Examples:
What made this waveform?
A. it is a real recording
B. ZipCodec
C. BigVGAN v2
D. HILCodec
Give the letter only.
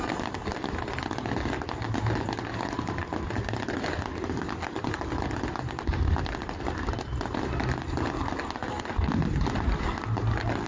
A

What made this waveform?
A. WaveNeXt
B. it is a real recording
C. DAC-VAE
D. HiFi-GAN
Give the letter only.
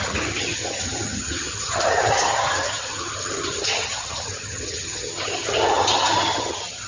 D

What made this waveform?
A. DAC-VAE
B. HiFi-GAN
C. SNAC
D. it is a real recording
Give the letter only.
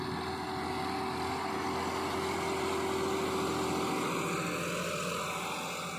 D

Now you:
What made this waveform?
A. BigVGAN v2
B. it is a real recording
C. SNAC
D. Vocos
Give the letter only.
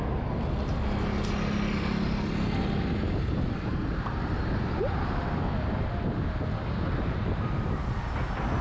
B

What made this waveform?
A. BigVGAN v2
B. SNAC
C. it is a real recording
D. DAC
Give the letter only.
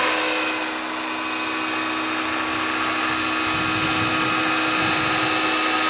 C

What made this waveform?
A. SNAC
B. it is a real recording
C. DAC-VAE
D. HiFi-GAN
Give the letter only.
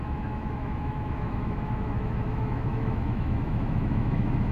C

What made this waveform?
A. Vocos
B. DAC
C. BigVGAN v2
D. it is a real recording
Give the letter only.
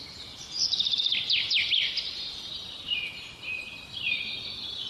D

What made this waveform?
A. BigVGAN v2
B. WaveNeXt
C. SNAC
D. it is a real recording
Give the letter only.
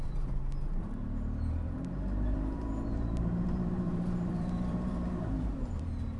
A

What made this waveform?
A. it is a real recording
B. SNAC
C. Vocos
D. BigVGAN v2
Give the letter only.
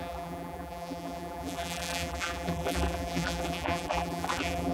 D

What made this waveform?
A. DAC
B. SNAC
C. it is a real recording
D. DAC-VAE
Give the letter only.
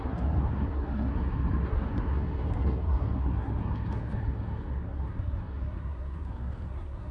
B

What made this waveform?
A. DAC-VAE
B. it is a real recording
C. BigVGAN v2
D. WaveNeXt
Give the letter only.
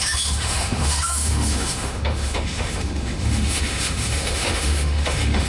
A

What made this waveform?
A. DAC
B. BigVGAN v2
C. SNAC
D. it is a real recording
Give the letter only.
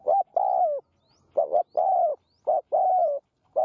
D